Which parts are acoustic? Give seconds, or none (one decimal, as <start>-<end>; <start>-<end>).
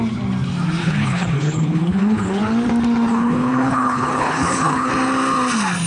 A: 0.0-0.8; 2.4-3.1; 4.9-5.9